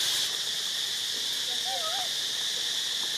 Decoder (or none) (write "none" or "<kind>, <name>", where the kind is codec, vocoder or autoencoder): none